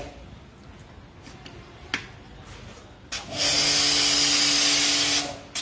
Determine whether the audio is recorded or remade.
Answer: recorded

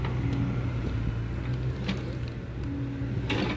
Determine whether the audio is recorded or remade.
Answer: recorded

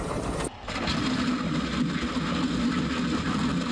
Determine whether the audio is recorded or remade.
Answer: recorded